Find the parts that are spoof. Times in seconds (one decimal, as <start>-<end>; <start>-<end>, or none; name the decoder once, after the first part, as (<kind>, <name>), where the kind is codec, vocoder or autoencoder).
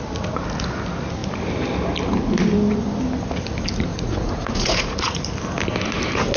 3.9-5.3 (vocoder, Vocos)